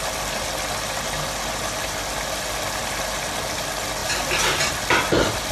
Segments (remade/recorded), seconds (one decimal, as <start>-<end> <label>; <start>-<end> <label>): 0.0-5.5 recorded

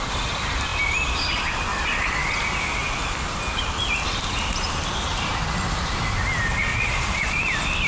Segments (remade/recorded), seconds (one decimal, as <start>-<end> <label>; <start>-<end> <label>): 0.0-1.7 recorded; 1.7-2.3 remade; 2.3-6.7 recorded; 6.7-7.4 remade; 7.4-7.9 recorded

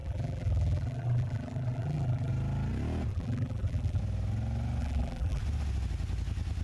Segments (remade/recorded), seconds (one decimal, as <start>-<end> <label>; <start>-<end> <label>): 0.0-2.3 remade; 2.3-3.1 recorded; 3.1-4.0 remade; 4.0-4.8 recorded; 4.8-5.4 remade; 5.4-6.6 recorded

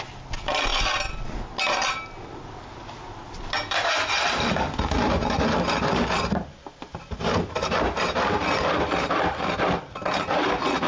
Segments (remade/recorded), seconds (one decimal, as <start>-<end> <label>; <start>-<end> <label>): 0.0-10.9 recorded

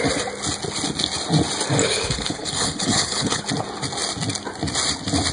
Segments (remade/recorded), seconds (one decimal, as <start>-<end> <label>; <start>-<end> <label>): 0.0-1.8 recorded; 1.8-3.4 remade; 3.4-5.3 recorded

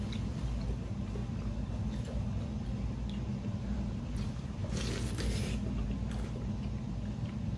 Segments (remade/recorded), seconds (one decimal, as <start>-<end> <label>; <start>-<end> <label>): 0.0-3.3 recorded; 3.3-4.7 remade; 4.7-7.6 recorded

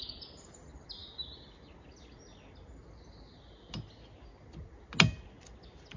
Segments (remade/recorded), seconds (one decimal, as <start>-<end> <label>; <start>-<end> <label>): 0.0-6.0 recorded

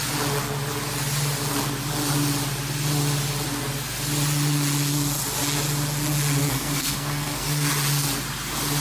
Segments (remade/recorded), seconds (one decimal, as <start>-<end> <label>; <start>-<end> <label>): 0.0-6.4 recorded; 6.4-7.7 remade; 7.7-8.8 recorded